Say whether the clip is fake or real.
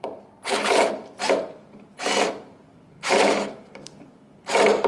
fake